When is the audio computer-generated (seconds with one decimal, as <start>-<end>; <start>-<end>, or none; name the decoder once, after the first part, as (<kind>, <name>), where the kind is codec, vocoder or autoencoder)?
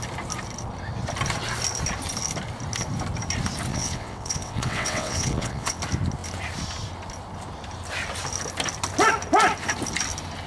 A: 3.7-5.8 (vocoder, WaveNeXt)